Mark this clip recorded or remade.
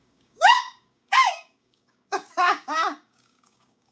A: remade